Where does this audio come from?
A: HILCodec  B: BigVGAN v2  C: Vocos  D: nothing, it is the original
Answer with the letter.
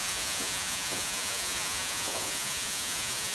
C